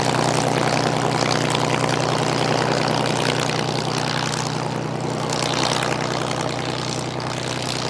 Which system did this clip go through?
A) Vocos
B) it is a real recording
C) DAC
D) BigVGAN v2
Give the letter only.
B